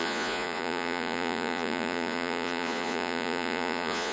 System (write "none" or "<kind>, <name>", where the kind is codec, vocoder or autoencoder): vocoder, Vocos